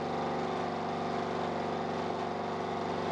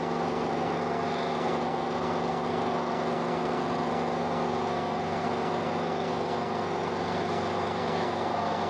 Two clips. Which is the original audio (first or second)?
first